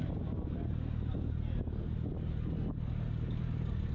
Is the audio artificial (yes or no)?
no